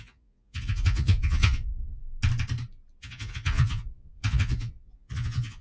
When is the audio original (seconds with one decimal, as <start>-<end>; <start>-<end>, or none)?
2.0-3.0